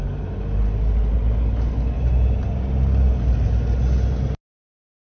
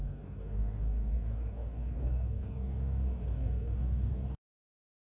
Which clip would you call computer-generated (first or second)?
second